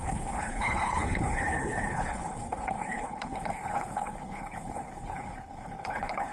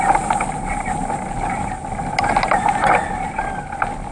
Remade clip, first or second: first